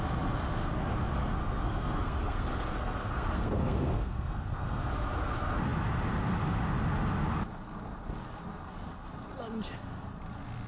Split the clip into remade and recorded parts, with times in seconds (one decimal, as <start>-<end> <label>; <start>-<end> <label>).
0.0-1.4 recorded; 1.4-4.8 remade; 4.8-10.7 recorded